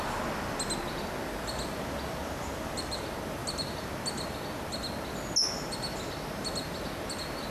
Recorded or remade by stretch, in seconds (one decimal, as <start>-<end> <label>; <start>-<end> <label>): 0.0-2.2 recorded; 2.2-3.0 remade; 3.0-3.4 recorded; 3.4-4.0 remade; 4.0-7.5 recorded